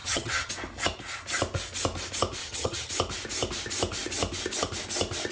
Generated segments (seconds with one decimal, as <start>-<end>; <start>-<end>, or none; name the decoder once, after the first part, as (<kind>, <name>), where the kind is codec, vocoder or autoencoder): 0.0-0.5 (vocoder, HiFi-GAN); 2.4-2.9